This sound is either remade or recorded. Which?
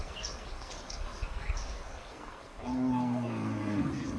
remade